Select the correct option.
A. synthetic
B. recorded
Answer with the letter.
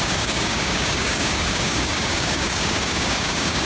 A